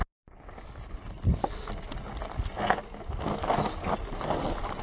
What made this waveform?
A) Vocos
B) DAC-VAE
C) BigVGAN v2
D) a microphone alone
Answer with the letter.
D